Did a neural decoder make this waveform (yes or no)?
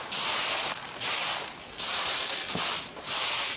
no